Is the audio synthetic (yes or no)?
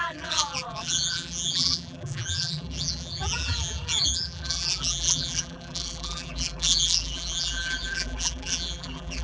yes